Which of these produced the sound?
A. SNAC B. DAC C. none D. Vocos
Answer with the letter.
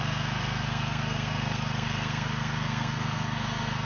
A